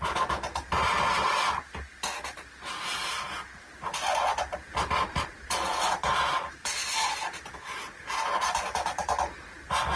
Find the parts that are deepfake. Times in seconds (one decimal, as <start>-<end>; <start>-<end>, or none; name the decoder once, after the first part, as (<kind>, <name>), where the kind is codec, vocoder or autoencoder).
none